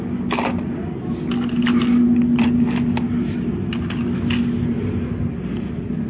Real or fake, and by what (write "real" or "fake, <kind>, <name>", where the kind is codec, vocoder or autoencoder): real